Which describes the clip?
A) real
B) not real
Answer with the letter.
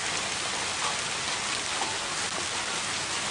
A